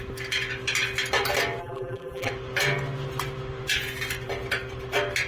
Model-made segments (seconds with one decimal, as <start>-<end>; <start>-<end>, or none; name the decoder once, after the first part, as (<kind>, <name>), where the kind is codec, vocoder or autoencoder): 1.6-2.3 (vocoder, BigVGAN v2)